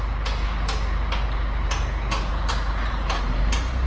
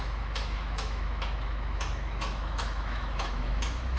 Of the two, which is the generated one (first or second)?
second